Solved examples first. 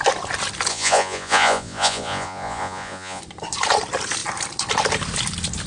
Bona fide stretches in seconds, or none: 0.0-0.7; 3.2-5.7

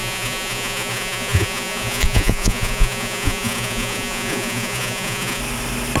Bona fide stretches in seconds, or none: 5.4-6.0